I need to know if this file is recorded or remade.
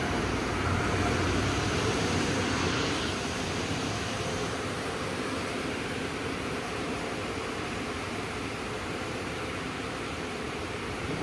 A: remade